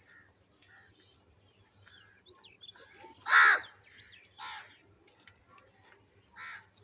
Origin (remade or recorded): recorded